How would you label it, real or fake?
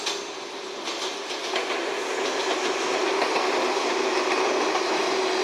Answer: real